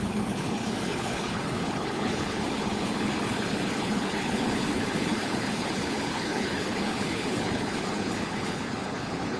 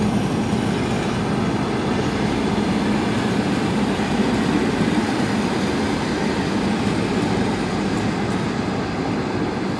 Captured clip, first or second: second